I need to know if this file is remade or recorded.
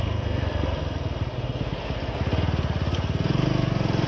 recorded